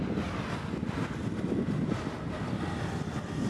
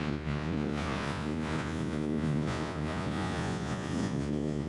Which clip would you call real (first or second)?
first